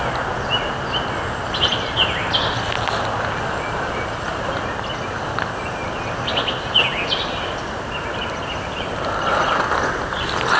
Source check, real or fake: real